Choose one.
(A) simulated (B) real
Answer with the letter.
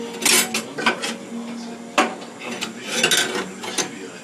B